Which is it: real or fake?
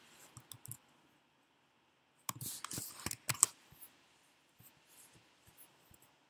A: real